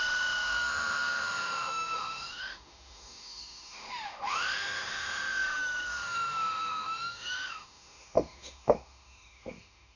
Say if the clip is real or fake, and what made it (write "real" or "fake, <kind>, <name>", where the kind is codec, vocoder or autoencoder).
fake, autoencoder, DAC-VAE